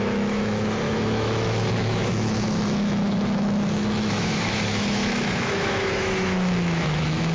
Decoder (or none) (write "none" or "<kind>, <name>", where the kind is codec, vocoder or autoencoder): autoencoder, DAC-VAE